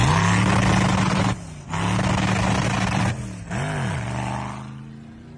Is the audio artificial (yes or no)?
no